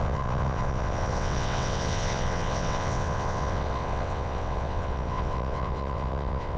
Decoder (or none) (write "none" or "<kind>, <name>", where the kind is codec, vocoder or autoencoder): vocoder, WaveNeXt